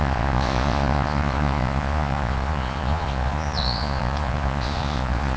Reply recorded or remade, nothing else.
remade